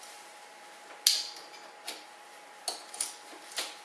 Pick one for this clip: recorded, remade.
recorded